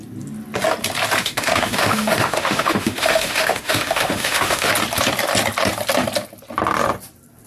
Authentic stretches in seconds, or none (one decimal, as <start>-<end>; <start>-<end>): 0.0-1.2; 4.7-7.5